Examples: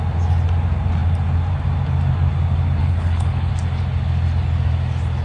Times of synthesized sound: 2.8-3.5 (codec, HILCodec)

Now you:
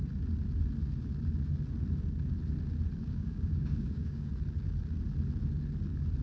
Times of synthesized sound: 3.0-4.3 (codec, DAC)

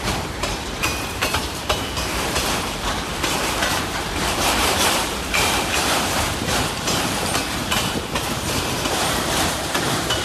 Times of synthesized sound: 0.0-10.2 (vocoder, BigVGAN v2)